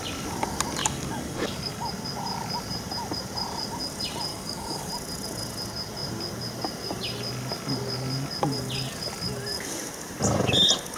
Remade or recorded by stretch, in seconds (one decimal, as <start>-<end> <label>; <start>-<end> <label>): 0.0-0.8 recorded; 0.8-1.9 remade; 1.9-4.3 recorded; 4.3-4.9 remade; 4.9-11.0 recorded